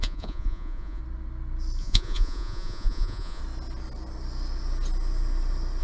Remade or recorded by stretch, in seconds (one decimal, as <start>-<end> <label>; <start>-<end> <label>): 0.0-1.0 remade; 1.0-1.8 recorded; 1.8-3.4 remade; 3.4-5.8 recorded